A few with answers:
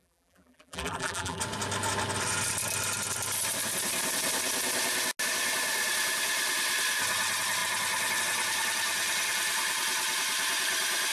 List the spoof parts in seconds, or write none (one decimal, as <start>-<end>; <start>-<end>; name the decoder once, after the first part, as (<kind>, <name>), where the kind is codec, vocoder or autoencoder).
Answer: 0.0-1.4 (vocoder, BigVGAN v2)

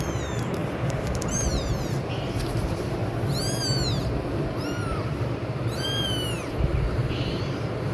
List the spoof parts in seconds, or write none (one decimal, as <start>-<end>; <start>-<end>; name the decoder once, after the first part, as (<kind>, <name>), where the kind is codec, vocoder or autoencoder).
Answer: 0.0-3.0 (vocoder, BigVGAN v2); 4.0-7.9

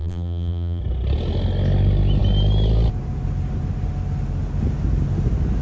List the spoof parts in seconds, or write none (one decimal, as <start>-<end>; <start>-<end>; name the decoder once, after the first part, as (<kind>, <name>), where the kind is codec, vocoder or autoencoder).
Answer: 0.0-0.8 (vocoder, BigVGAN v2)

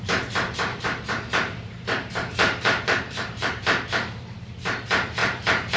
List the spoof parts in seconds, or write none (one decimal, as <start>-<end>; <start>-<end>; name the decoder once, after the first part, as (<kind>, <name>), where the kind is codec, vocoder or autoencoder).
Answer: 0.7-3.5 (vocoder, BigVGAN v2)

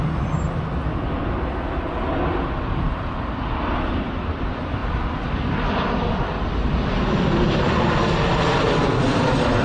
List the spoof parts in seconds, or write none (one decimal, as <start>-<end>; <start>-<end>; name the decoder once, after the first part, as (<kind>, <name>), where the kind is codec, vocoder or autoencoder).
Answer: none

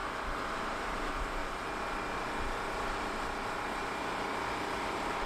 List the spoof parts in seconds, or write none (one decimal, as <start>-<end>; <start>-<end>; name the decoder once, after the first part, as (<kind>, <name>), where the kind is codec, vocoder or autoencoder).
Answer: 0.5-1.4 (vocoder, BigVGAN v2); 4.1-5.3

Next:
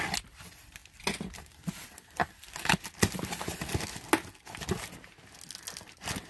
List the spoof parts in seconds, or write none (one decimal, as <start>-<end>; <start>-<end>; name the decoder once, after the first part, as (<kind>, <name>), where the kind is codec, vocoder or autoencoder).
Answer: none